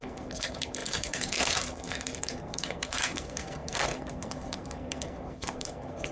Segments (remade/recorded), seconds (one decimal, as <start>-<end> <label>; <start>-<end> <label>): 0.0-6.1 remade